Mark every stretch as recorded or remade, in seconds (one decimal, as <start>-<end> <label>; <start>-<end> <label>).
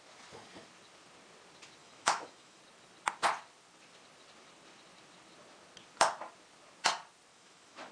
0.0-1.8 recorded; 1.8-2.6 remade; 2.6-7.3 recorded; 7.3-7.9 remade